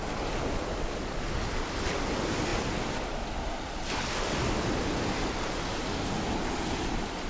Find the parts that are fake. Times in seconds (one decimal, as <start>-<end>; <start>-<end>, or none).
none